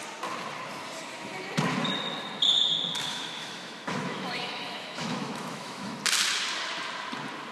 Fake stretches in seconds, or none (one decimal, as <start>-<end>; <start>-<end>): 3.1-6.0